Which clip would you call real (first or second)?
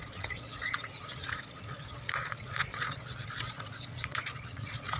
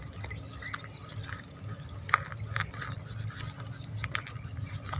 second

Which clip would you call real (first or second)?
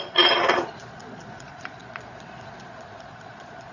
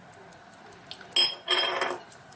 second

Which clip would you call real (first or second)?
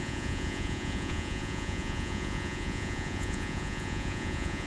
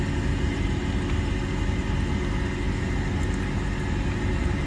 second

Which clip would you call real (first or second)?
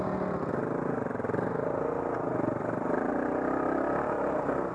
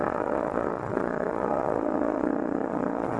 first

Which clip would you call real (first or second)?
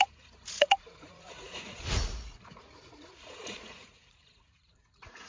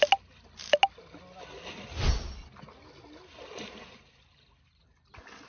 second